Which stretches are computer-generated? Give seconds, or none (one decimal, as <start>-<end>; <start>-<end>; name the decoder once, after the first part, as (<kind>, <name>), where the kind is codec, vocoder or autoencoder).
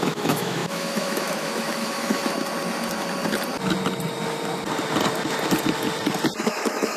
0.0-2.2 (autoencoder, DAC-VAE); 6.4-7.0